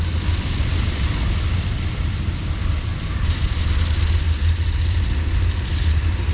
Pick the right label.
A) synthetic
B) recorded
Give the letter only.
B